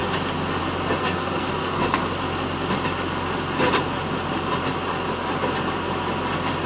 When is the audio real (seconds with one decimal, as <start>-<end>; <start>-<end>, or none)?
0.0-1.0; 2.0-6.7